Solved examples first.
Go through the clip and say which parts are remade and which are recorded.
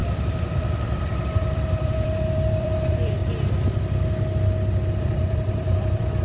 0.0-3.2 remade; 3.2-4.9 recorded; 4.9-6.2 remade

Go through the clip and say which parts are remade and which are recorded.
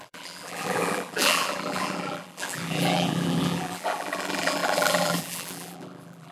0.0-6.3 remade